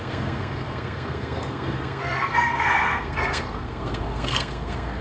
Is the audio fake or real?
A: fake